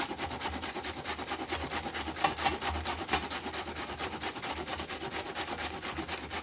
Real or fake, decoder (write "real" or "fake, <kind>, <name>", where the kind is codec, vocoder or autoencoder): real